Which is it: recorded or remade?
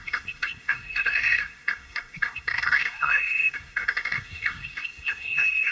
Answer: remade